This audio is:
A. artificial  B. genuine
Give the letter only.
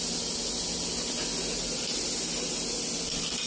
B